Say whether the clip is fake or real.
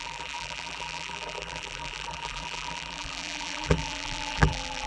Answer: fake